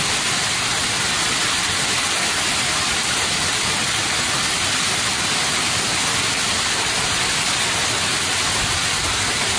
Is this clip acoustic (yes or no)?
yes